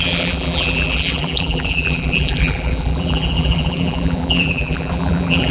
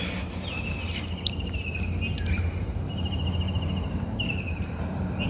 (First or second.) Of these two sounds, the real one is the second